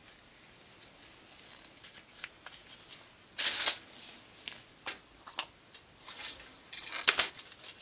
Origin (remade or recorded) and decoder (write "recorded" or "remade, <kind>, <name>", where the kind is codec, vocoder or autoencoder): recorded